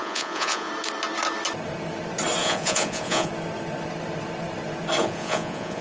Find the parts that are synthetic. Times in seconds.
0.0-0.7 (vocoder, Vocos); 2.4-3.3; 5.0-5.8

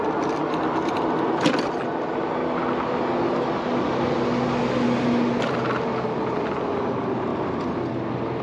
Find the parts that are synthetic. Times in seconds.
none

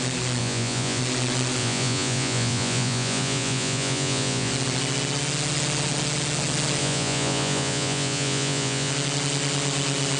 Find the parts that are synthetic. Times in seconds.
0.4-1.0 (vocoder, Vocos); 1.6-4.5; 6.8-8.9

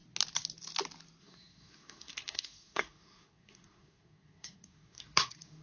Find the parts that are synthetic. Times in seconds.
1.2-5.6 (codec, SNAC)